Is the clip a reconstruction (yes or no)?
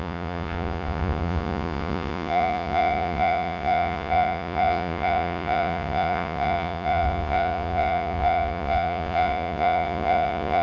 yes